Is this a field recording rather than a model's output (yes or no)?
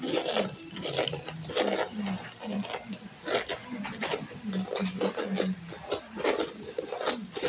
yes